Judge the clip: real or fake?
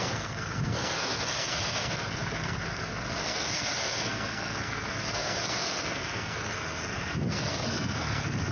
fake